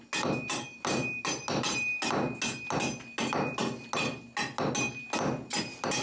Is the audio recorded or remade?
recorded